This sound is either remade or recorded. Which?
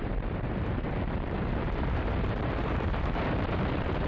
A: remade